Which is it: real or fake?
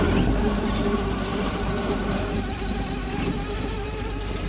fake